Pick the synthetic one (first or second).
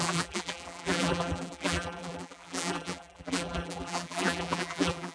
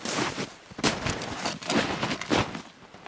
first